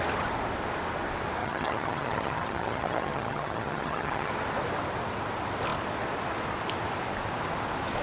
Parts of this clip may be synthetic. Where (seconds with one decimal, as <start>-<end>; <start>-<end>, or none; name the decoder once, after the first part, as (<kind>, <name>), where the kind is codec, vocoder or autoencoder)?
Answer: 1.4-4.3 (vocoder, HiFi-GAN)